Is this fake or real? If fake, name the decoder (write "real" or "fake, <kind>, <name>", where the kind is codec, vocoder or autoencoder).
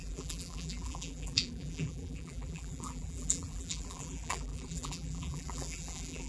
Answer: fake, vocoder, BigVGAN v2